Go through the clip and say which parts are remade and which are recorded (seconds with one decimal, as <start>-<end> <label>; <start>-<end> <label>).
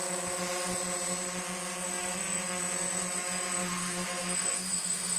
0.0-3.6 recorded; 3.6-5.2 remade